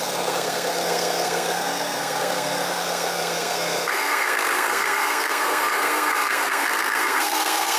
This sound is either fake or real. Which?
fake